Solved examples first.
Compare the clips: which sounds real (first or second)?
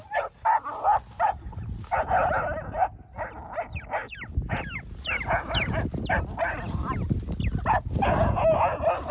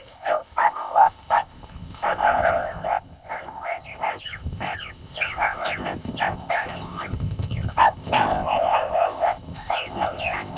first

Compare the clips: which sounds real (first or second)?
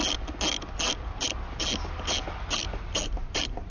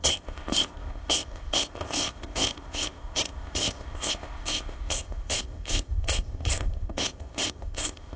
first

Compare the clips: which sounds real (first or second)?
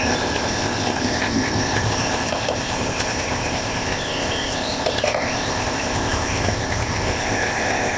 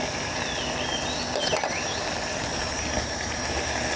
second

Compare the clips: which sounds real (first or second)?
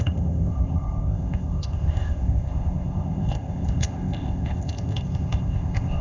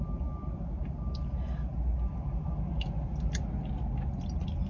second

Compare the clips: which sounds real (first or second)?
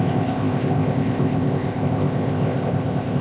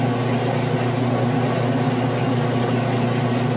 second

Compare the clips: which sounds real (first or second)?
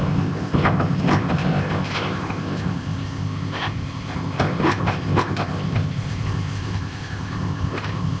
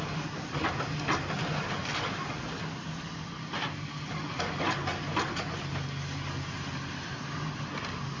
second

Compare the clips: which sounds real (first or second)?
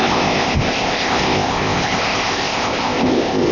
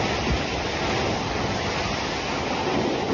second